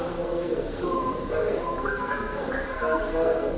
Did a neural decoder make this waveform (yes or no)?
yes